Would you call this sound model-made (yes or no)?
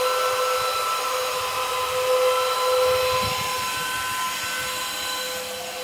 no